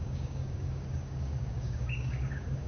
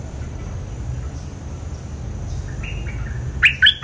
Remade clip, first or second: first